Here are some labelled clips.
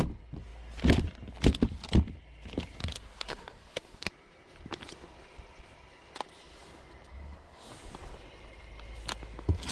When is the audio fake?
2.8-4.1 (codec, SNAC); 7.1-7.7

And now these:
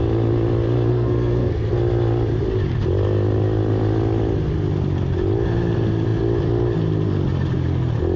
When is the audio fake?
0.9-1.8 (codec, SNAC)

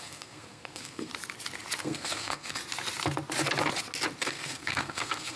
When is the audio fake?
0.0-1.1 (codec, SNAC); 1.8-2.6; 4.2-5.4

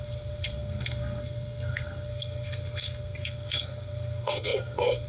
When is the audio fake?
0.0-5.1 (codec, SNAC)